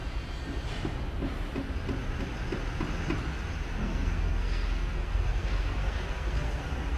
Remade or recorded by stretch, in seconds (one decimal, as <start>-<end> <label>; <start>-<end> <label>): 0.0-3.8 recorded; 3.8-7.0 remade